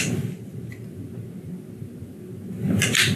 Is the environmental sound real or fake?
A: real